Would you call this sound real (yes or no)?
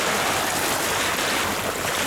yes